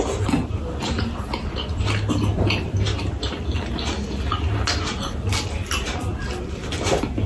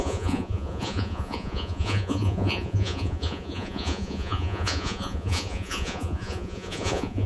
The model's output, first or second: second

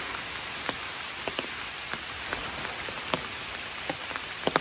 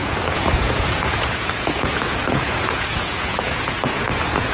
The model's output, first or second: second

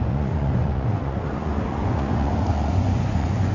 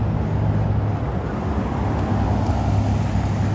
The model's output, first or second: first